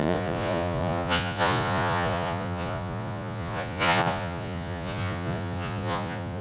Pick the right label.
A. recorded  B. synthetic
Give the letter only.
B